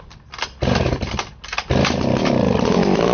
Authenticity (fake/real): real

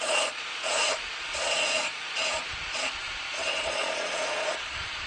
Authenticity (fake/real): fake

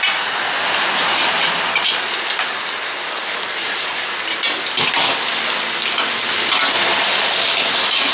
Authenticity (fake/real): real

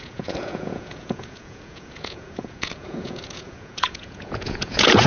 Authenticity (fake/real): fake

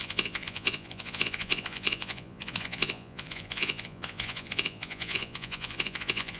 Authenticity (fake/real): fake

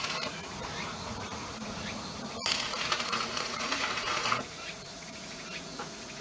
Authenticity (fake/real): fake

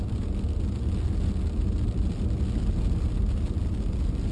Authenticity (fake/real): real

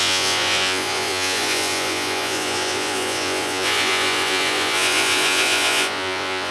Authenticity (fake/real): fake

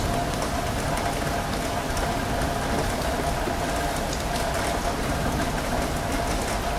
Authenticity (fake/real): real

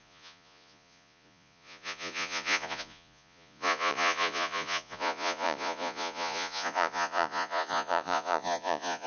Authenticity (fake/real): fake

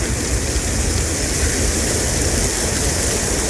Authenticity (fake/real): real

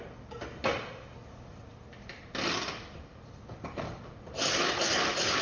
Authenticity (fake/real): real